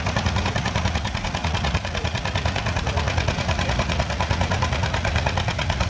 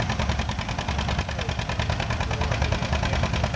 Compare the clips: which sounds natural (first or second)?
second